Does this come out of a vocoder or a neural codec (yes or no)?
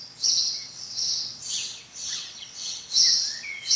yes